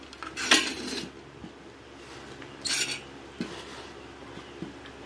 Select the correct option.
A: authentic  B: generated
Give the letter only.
A